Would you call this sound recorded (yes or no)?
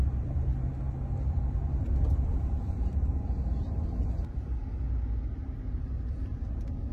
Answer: yes